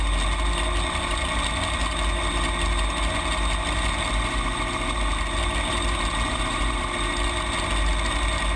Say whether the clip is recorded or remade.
recorded